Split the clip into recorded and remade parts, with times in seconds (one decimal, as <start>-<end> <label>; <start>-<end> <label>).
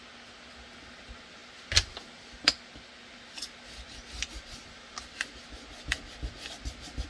0.0-7.1 recorded